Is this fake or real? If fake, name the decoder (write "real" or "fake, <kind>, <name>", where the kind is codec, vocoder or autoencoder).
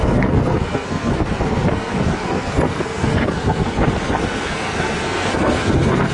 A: fake, codec, SNAC